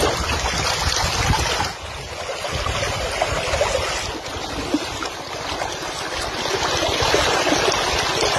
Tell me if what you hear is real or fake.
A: real